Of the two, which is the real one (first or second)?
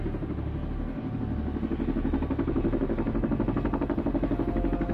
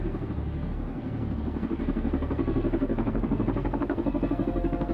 first